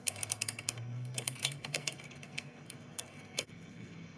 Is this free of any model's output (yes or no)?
no